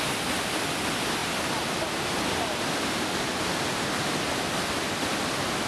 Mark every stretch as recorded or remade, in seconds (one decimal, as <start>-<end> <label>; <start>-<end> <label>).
0.0-3.7 recorded; 3.7-4.3 remade; 4.3-5.7 recorded